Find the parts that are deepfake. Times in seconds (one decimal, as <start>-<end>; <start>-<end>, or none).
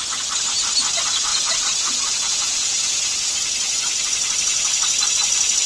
1.3-3.3